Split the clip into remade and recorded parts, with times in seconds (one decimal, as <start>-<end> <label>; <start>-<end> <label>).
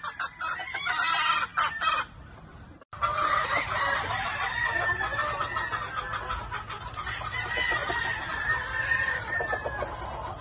0.0-1.5 recorded; 1.5-4.6 remade; 4.6-7.8 recorded; 7.8-9.4 remade; 9.4-10.4 recorded